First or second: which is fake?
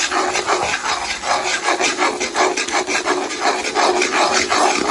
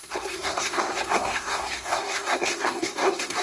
second